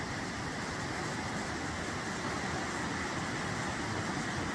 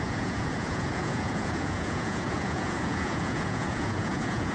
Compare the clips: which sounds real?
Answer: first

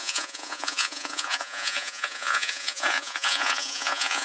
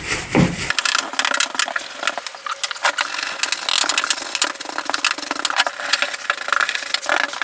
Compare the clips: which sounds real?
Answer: second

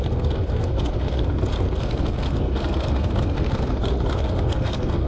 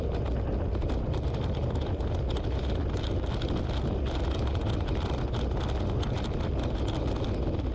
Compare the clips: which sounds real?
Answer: second